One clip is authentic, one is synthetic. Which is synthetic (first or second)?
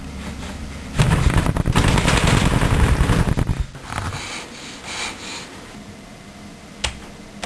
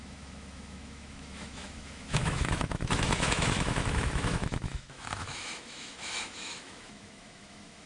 second